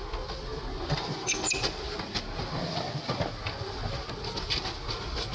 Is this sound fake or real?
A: real